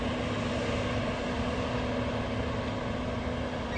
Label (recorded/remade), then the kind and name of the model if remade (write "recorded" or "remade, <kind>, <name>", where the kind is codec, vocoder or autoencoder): recorded